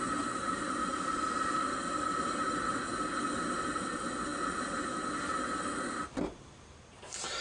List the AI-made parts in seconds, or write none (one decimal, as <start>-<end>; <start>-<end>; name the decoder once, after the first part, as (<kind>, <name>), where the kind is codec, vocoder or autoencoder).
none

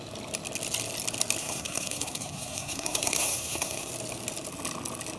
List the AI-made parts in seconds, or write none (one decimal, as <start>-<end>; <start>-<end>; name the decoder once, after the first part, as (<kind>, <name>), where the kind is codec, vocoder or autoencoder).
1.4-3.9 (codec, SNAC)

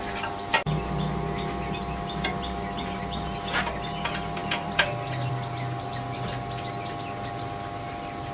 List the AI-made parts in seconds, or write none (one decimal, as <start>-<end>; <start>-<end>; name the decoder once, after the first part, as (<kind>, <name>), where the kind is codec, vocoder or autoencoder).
none

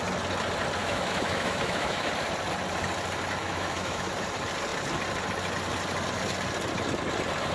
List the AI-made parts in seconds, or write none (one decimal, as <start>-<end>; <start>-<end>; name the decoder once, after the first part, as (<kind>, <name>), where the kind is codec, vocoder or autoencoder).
0.8-2.1 (autoencoder, DAC-VAE); 3.4-4.1